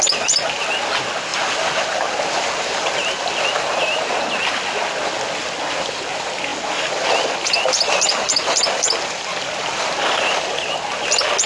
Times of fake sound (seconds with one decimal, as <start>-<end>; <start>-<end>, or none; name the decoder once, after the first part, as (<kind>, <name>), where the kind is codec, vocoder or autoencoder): 1.3-3.3 (vocoder, BigVGAN v2); 6.5-10.7